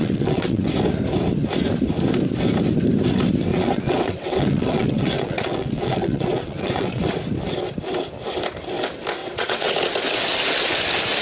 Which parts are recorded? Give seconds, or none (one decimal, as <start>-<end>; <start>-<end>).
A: 0.7-3.5; 7.1-9.2; 9.7-11.2